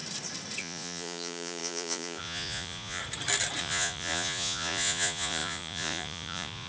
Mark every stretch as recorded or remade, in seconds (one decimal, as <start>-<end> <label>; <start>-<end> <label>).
0.0-0.6 recorded; 0.6-3.0 remade; 3.0-3.6 recorded; 3.6-6.7 remade